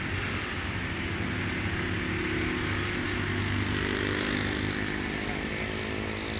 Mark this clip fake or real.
real